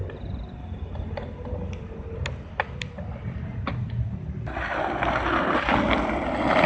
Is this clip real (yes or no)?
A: yes